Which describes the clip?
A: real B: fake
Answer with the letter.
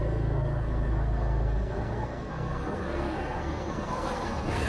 B